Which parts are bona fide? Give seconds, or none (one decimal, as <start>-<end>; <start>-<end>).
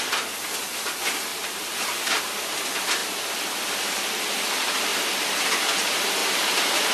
0.0-1.3; 2.2-6.2